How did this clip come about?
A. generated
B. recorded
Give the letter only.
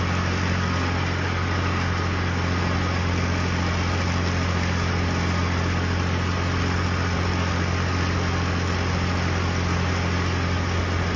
B